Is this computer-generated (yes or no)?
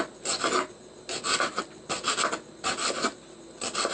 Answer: no